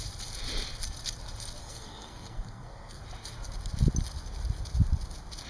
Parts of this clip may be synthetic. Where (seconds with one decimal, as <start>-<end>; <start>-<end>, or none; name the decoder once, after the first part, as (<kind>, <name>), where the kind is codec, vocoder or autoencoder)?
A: 1.6-3.0 (codec, SNAC)